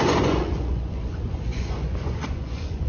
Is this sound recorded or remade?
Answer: remade